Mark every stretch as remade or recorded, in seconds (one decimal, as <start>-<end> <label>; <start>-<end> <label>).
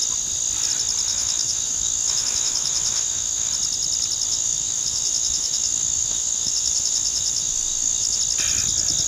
0.0-1.1 recorded; 1.1-3.5 remade; 3.5-4.3 recorded; 4.3-8.2 remade; 8.2-9.1 recorded